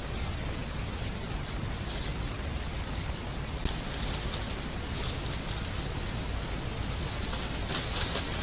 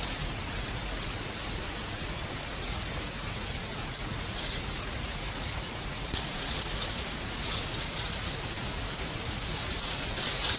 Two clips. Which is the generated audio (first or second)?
second